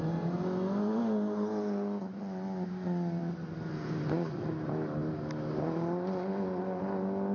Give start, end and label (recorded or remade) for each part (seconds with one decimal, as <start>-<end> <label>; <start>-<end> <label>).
0.0-7.3 recorded